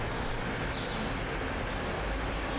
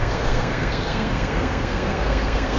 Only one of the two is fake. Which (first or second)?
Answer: second